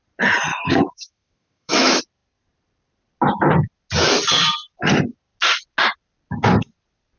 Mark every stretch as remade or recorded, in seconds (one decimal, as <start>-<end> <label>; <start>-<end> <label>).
0.0-0.5 recorded; 0.5-2.0 remade; 2.0-7.2 recorded

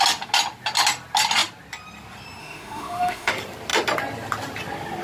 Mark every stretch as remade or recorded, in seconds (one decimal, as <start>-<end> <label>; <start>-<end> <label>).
0.0-2.4 recorded; 2.4-3.3 remade; 3.3-5.0 recorded

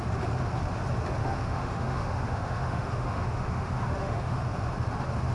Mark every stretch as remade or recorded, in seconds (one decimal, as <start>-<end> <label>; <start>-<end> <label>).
0.0-1.2 recorded; 1.2-4.4 remade; 4.4-5.3 recorded

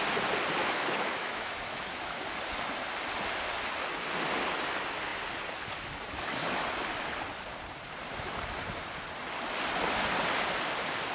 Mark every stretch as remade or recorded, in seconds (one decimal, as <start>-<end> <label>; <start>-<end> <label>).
0.0-0.6 recorded; 0.6-2.2 remade; 2.2-11.1 recorded

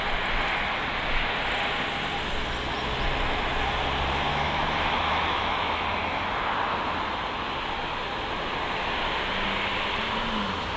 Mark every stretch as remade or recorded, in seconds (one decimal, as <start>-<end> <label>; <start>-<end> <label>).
0.0-4.3 recorded; 4.3-5.8 remade; 5.8-10.8 recorded

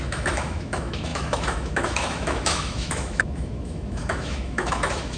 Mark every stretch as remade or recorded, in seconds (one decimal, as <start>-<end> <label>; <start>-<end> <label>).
0.0-5.2 remade

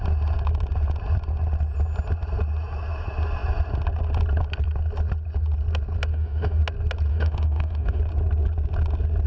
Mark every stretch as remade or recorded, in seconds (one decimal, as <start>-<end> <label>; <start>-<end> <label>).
0.0-6.1 recorded; 6.1-6.6 remade; 6.6-7.1 recorded; 7.1-8.0 remade; 8.0-9.3 recorded